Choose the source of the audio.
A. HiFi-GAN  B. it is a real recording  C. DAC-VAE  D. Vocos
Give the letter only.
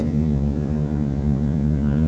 D